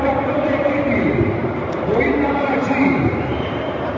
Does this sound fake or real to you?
fake